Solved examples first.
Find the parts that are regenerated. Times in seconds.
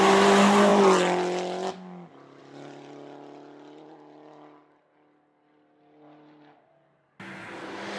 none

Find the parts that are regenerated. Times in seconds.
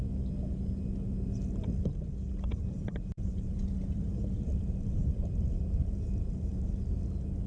2.5-7.0 (vocoder, BigVGAN v2)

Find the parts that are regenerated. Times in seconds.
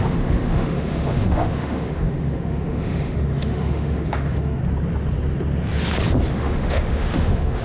0.0-4.6 (autoencoder, DAC-VAE); 6.3-7.6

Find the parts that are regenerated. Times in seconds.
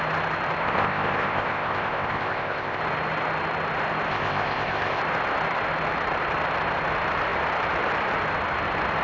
0.6-2.8 (codec, ZipCodec); 4.1-5.0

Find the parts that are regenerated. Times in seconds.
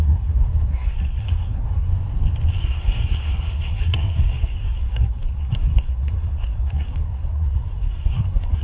0.0-1.9 (codec, SNAC); 2.6-8.6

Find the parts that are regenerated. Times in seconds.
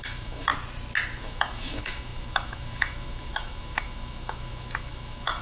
0.0-0.5 (autoencoder, DAC-VAE); 1.2-5.4